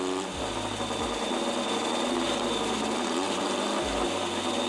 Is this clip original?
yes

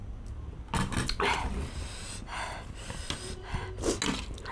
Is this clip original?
yes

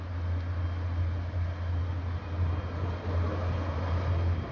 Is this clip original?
yes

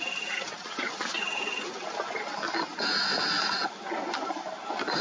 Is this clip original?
yes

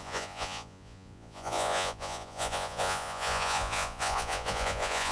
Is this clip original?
no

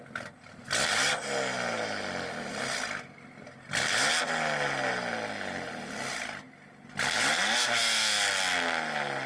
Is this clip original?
yes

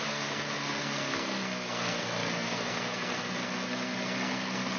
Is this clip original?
no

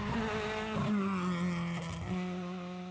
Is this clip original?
yes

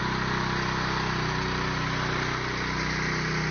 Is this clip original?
yes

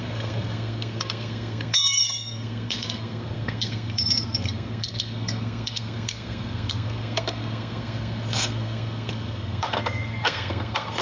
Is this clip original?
no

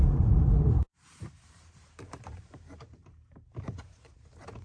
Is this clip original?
no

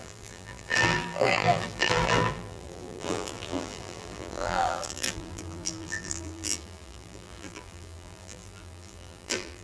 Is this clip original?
no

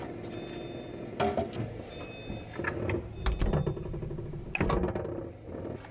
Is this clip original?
yes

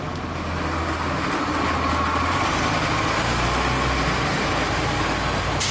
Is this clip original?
yes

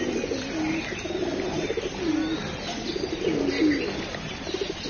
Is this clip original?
yes